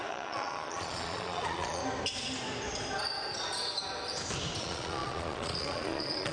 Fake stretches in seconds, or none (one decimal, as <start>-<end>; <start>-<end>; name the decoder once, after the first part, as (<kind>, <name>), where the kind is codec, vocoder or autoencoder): 0.0-1.8 (vocoder, Vocos); 4.6-6.3